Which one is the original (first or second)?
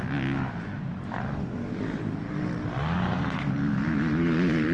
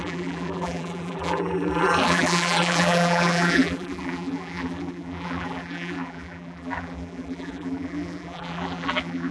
first